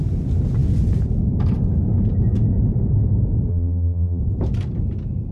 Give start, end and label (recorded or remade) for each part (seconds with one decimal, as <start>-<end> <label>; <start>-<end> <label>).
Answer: 0.0-3.5 recorded; 3.5-4.2 remade; 4.2-5.3 recorded